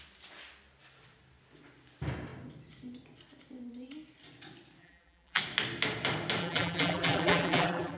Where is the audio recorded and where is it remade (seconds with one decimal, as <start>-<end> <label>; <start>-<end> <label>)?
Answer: 0.0-4.8 recorded; 4.8-5.4 remade; 5.4-6.4 recorded; 6.4-8.0 remade